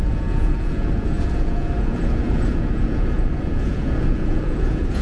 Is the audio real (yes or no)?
no